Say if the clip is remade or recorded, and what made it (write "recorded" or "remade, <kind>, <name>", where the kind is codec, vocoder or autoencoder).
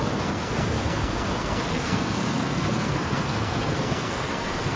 remade, codec, SNAC